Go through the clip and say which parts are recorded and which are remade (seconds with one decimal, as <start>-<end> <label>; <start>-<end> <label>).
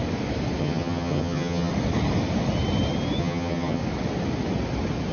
0.0-0.6 recorded; 0.6-1.7 remade; 1.7-3.2 recorded; 3.2-3.8 remade; 3.8-5.1 recorded